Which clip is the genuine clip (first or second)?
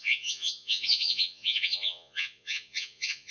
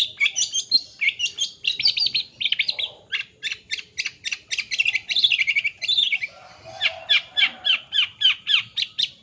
second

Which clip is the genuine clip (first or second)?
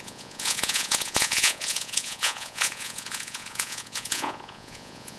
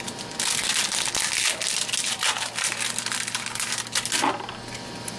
second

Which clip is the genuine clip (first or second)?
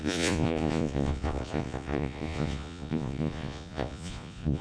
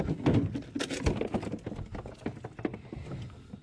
second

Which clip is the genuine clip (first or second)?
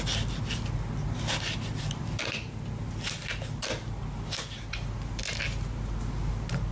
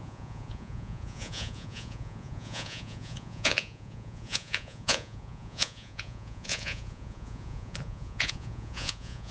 first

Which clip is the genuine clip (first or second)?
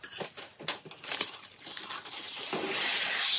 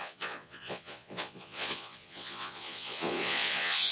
first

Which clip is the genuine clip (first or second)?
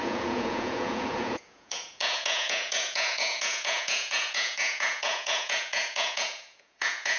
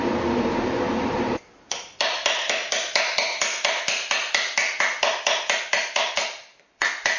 second